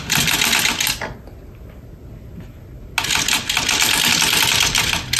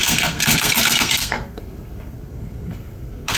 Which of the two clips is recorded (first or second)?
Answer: first